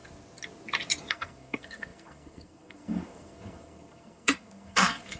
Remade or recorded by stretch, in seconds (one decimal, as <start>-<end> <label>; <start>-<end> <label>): 0.0-1.1 recorded; 1.1-5.2 remade